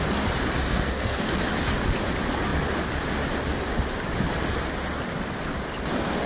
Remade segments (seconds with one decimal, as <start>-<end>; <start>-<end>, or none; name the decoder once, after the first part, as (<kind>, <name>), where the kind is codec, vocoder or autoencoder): 0.7-1.3 (codec, SNAC)